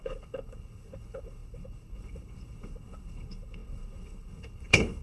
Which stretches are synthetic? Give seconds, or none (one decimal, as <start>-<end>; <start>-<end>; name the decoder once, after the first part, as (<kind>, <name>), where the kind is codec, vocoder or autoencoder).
0.0-5.0 (codec, HILCodec)